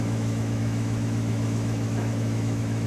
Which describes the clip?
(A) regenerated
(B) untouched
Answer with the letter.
A